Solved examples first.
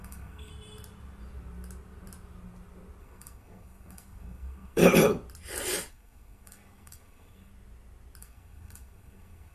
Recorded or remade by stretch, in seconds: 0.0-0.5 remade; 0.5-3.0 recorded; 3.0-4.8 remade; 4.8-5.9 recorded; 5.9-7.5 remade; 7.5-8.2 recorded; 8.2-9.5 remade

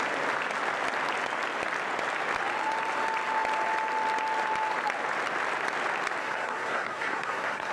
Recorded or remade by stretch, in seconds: 0.0-6.2 recorded; 6.2-7.7 remade